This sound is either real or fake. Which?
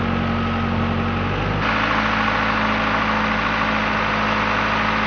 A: real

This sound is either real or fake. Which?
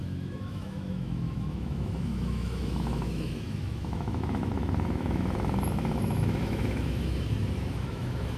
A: fake